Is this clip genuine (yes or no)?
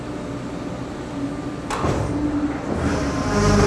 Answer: yes